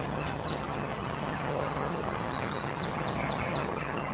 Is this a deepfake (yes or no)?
yes